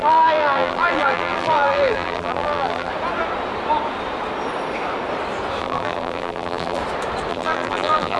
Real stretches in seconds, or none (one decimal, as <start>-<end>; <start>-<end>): 2.9-5.6; 6.8-7.3